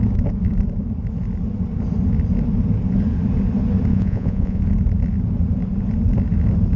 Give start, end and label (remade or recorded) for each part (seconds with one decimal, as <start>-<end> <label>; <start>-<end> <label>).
0.0-3.9 recorded; 3.9-4.6 remade; 4.6-6.8 recorded